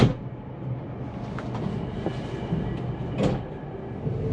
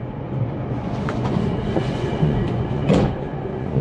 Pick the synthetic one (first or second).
second